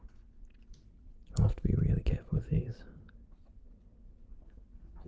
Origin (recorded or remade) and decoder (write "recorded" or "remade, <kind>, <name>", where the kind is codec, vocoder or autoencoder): recorded